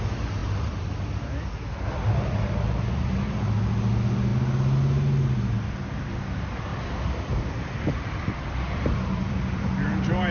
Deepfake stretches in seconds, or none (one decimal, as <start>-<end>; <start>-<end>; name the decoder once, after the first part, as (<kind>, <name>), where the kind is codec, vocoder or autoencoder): 0.4-0.9 (vocoder, BigVGAN v2); 6.7-10.3